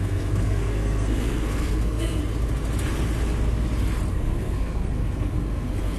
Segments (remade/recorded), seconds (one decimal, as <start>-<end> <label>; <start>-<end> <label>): 0.0-2.2 remade; 2.2-4.1 recorded; 4.1-6.0 remade